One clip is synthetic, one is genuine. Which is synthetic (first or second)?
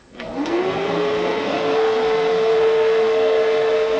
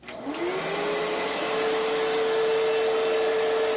first